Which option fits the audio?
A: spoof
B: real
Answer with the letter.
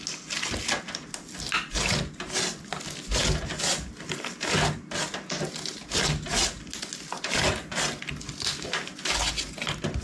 B